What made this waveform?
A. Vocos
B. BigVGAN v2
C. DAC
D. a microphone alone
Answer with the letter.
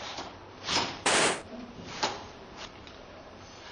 B